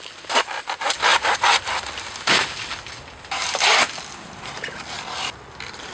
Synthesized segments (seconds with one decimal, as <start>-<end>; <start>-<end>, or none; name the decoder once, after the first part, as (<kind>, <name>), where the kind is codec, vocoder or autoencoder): none